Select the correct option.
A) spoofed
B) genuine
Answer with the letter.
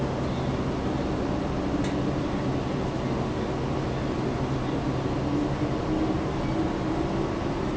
B